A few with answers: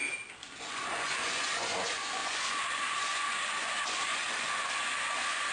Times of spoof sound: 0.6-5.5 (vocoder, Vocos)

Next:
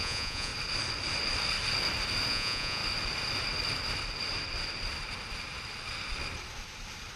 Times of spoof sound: 0.0-0.5 (vocoder, Vocos); 2.3-2.8

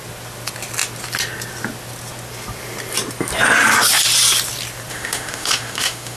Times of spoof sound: 4.9-6.2 (autoencoder, DAC-VAE)

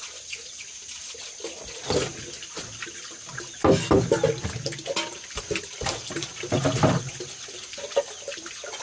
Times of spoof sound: none

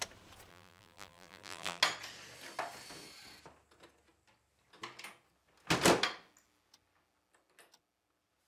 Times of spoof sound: 0.5-1.8 (vocoder, BigVGAN v2)

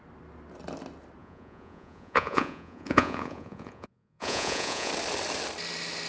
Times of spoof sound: 1.2-4.9 (vocoder, Vocos)

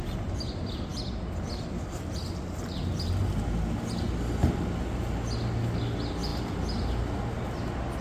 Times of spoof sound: none